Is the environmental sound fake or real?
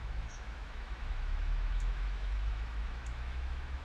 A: fake